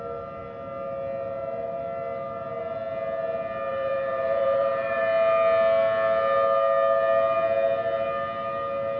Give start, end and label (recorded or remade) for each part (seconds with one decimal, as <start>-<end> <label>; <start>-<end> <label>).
0.0-3.7 recorded; 3.7-5.0 remade; 5.0-9.0 recorded